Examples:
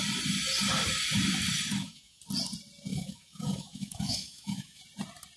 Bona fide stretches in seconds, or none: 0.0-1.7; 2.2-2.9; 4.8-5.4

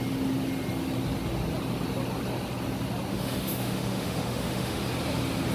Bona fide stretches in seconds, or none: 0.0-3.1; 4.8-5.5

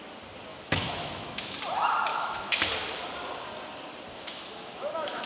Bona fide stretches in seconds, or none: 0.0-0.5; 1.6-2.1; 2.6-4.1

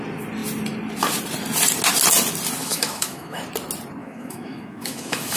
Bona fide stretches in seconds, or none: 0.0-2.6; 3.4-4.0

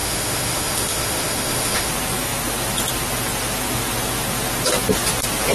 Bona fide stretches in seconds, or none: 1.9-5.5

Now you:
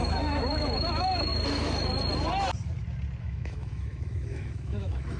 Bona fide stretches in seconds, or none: 1.3-3.2

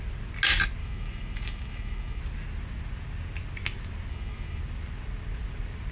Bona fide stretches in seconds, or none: 0.0-0.8; 2.2-4.1; 4.6-5.9

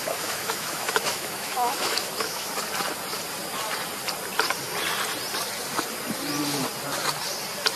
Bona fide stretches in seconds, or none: 2.5-7.8